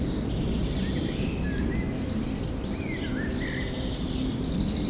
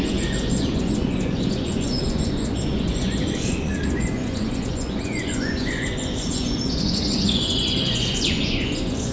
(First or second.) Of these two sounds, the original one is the first